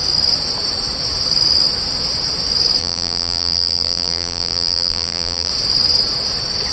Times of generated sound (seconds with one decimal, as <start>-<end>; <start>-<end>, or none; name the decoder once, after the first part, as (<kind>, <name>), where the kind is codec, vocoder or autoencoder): 2.8-5.5 (vocoder, BigVGAN v2)